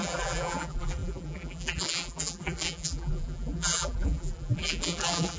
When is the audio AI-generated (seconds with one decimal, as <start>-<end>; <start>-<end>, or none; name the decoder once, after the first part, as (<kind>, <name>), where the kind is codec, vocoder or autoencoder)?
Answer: 0.0-5.4 (vocoder, BigVGAN v2)

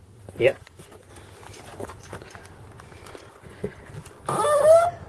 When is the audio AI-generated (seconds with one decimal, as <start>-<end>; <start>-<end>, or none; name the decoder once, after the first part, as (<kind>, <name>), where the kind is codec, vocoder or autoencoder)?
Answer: 0.5-1.1 (vocoder, Vocos); 1.7-2.2; 3.0-3.9